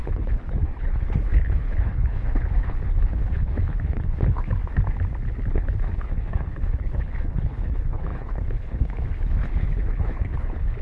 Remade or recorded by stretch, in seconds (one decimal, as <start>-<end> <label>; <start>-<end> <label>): 0.0-4.5 remade; 4.5-5.5 recorded; 5.5-10.8 remade